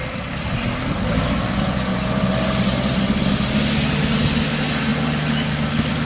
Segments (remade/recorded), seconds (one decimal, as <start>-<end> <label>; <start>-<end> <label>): 0.0-6.0 recorded